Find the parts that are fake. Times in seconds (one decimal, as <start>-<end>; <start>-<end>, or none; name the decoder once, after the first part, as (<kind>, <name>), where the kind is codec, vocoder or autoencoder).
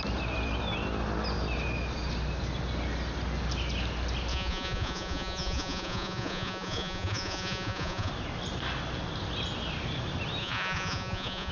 4.3-8.1 (vocoder, Vocos); 10.4-11.5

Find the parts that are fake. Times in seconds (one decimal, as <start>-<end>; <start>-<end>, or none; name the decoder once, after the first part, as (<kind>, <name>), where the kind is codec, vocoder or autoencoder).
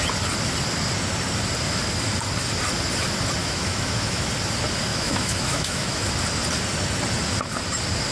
3.4-4.3 (autoencoder, DAC-VAE); 4.9-6.1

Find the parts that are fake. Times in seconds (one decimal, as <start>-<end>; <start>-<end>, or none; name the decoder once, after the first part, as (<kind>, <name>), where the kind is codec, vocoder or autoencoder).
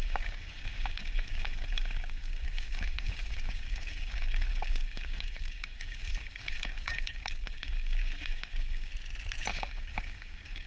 0.0-8.9 (codec, DAC); 9.5-10.7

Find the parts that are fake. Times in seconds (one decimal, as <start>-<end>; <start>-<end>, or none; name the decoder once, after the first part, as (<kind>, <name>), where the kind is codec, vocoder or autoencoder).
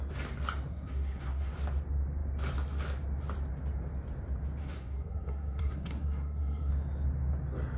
0.7-1.5 (codec, SNAC); 4.6-6.7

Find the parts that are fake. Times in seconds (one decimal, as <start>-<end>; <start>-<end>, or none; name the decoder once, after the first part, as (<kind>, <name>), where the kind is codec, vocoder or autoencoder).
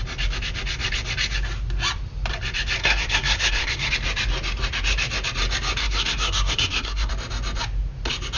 2.8-3.9 (codec, SNAC); 5.8-7.1